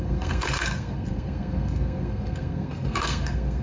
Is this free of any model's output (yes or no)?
no